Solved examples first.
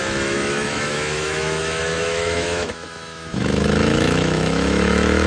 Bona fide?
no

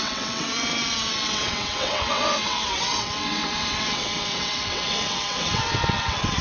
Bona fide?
no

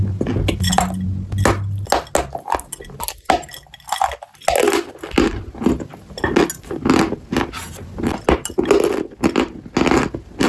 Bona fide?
yes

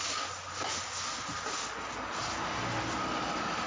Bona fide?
yes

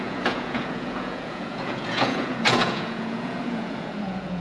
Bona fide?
no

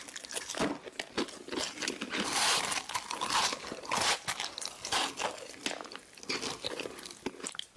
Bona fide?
yes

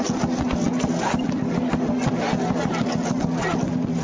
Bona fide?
yes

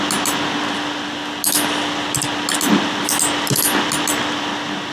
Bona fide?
yes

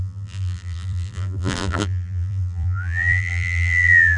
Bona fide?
no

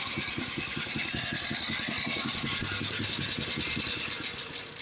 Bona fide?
yes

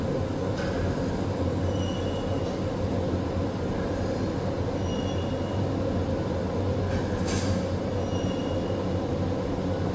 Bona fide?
yes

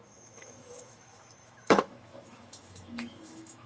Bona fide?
no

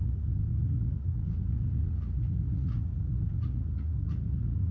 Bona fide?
no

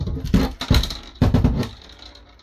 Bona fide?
yes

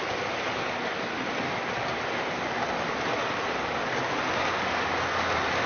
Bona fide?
yes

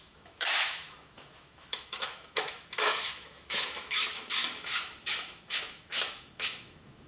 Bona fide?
no